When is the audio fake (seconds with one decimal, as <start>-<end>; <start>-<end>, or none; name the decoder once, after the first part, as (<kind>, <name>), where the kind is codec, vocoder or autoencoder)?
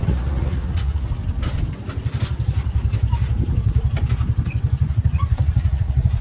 0.0-1.2 (vocoder, Vocos); 4.9-6.2